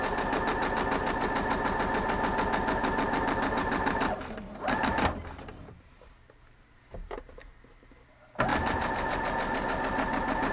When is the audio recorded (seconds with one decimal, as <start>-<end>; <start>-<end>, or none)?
0.0-2.8; 7.6-10.5